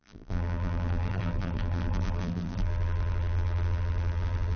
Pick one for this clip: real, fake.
fake